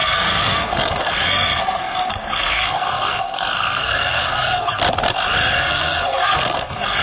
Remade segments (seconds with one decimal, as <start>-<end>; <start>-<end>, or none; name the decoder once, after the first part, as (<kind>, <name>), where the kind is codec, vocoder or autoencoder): 0.0-4.8 (codec, SNAC); 5.6-7.0